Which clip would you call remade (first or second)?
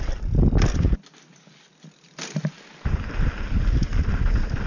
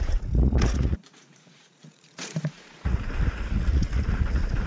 second